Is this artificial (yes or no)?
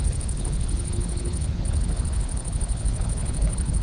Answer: yes